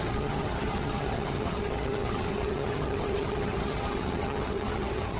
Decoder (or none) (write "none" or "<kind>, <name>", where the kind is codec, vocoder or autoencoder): vocoder, HiFi-GAN